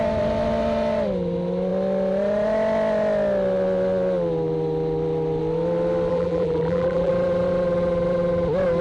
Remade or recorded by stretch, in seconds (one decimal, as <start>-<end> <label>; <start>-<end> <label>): 0.0-6.1 recorded; 6.1-7.1 remade; 7.1-8.8 recorded